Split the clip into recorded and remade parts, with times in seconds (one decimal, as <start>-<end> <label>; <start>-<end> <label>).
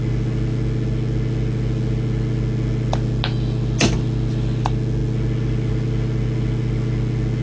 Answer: 0.0-7.4 recorded